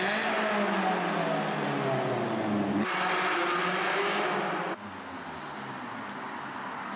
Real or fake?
real